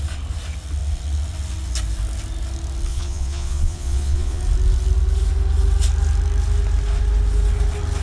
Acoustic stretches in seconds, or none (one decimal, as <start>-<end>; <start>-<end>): 0.0-2.9; 4.4-8.0

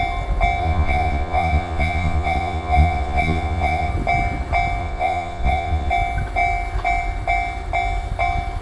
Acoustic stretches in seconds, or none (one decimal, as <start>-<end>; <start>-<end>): 0.0-0.6; 3.9-4.8; 5.9-8.6